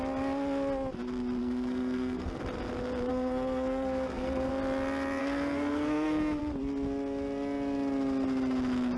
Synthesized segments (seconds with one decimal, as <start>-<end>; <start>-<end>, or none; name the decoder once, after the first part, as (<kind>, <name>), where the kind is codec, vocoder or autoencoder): 1.4-2.4 (codec, SNAC); 3.1-4.5; 5.2-6.4